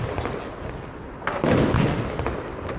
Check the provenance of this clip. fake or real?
real